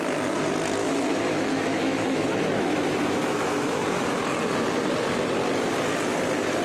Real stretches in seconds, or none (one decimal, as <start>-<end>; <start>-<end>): 0.0-0.8; 4.2-6.6